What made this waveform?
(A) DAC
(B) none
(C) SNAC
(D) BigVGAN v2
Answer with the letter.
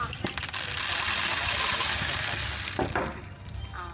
B